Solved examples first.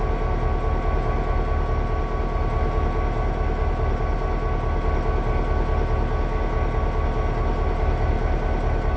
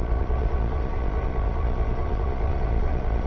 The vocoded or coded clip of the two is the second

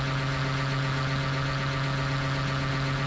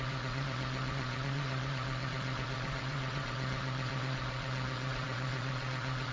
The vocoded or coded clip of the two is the second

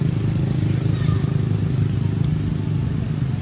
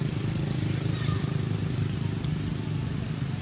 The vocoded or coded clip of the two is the second